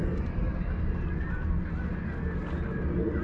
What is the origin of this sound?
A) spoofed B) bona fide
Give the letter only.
B